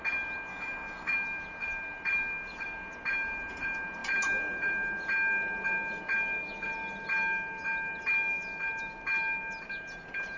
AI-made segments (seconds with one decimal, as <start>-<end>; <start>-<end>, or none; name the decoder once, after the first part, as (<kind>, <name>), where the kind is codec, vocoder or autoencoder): 0.5-1.1 (autoencoder, DAC-VAE)